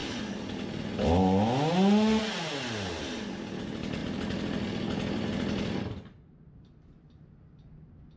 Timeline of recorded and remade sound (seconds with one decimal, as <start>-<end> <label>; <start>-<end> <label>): 0.0-8.2 recorded